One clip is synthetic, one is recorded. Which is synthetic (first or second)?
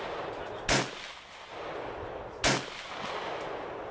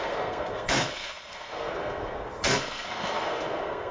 second